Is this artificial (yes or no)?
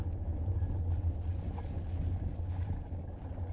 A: no